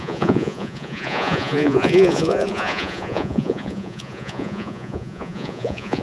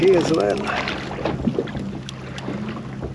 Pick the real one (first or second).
second